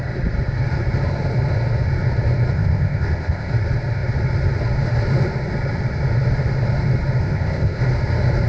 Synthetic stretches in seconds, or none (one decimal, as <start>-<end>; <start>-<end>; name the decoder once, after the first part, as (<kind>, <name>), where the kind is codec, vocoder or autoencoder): 2.5-3.5 (codec, ZipCodec); 7.2-7.8